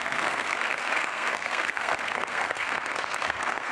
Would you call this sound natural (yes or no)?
no